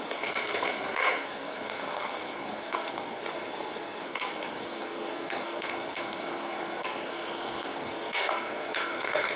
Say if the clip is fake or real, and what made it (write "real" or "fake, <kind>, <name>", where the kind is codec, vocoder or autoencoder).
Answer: fake, codec, SNAC